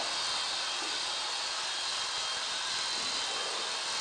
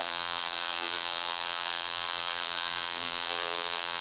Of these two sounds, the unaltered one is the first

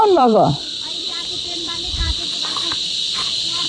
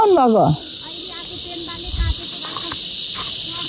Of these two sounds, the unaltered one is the second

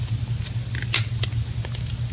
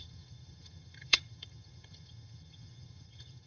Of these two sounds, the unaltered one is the first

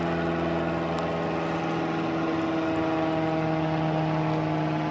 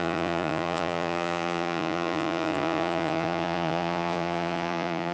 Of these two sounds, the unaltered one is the first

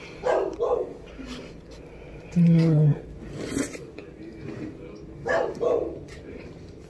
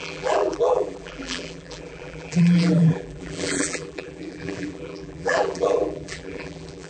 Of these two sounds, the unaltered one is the first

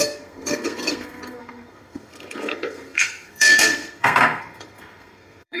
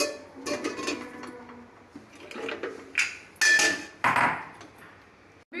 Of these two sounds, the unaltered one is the second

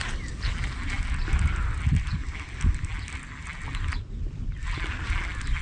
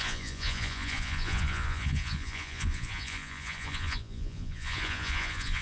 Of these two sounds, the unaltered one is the first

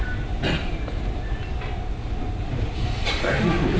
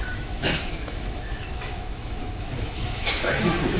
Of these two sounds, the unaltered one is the first